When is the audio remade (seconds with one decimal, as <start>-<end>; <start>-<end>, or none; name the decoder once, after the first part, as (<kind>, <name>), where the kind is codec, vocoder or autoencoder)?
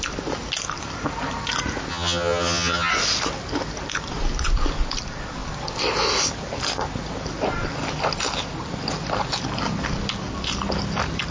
1.9-2.9 (vocoder, HiFi-GAN)